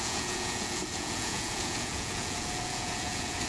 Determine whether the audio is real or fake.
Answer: fake